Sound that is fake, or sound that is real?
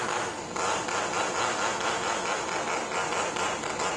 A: real